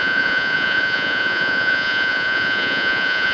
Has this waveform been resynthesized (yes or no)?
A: yes